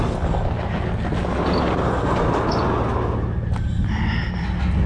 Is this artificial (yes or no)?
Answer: no